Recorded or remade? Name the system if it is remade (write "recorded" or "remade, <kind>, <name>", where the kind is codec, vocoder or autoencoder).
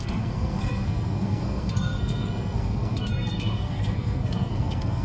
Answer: remade, codec, SNAC